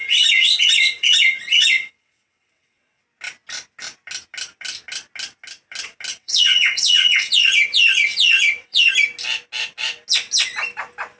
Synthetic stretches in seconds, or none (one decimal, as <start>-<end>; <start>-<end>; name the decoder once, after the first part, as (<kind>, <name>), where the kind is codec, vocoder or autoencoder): 0.0-3.0 (vocoder, WaveNeXt); 6.1-8.9